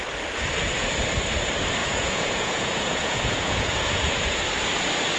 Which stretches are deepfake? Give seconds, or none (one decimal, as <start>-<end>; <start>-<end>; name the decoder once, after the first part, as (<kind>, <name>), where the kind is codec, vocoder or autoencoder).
1.8-4.4 (vocoder, Vocos)